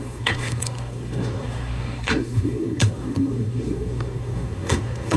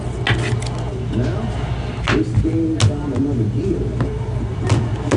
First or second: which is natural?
second